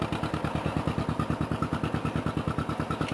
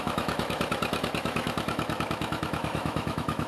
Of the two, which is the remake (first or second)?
second